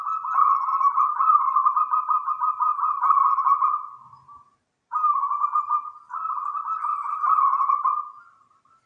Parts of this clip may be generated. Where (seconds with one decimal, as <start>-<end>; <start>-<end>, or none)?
0.7-2.3; 2.7-7.7